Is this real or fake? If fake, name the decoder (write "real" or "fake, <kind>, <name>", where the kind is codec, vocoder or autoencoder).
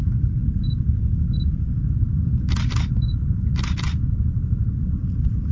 real